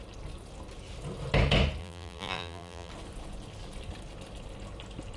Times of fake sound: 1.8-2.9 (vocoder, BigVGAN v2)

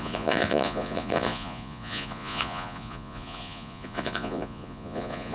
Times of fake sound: 0.0-5.3 (vocoder, Vocos)

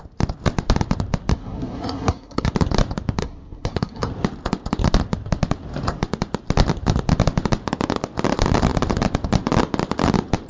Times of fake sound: 1.3-2.5 (codec, SNAC); 3.2-4.1

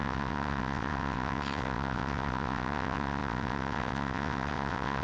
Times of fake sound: 0.0-5.0 (vocoder, WaveNeXt)

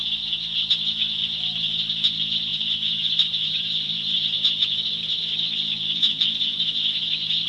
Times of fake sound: 2.5-7.0 (vocoder, BigVGAN v2)

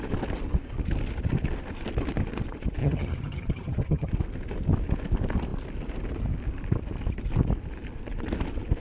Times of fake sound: 2.8-4.1 (vocoder, HiFi-GAN)

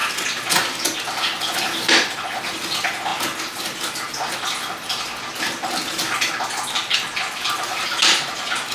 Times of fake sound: none